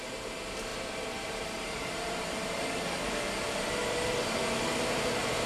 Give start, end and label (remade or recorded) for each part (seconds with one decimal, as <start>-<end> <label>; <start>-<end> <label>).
0.0-0.7 recorded; 0.7-2.6 remade; 2.6-3.8 recorded; 3.8-4.4 remade; 4.4-5.5 recorded